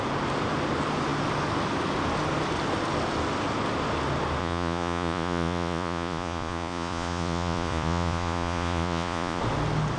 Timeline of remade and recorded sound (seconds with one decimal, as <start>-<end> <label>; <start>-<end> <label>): 0.0-4.4 recorded; 4.4-9.4 remade; 9.4-10.0 recorded